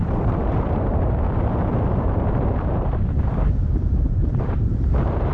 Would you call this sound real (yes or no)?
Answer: no